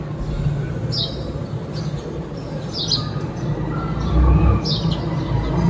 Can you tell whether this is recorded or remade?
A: recorded